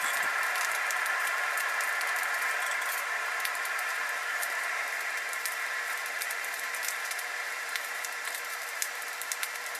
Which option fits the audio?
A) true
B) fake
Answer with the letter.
B